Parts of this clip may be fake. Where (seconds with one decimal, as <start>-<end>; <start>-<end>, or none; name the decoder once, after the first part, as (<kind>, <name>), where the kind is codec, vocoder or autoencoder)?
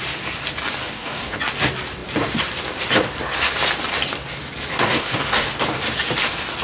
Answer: 0.8-1.4 (codec, DAC); 4.7-5.5